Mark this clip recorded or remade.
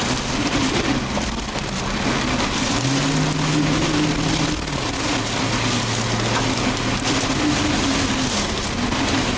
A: recorded